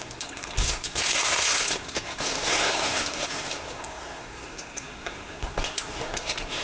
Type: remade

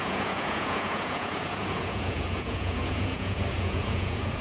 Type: remade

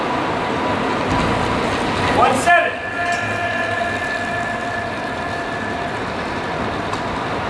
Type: recorded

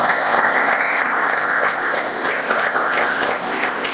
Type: remade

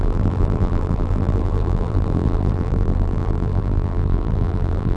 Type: remade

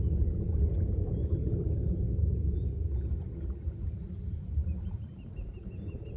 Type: recorded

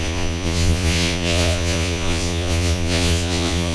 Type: remade